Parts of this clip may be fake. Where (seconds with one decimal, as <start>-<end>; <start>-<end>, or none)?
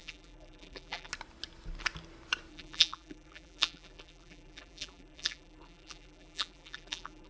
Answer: 0.0-1.1; 2.5-7.3